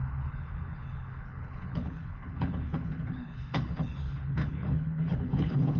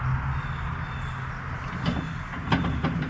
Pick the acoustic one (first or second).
second